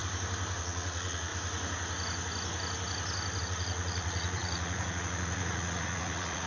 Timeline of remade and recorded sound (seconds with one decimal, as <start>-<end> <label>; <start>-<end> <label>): 0.0-0.6 recorded; 0.6-1.3 remade; 1.3-3.4 recorded; 3.4-6.5 remade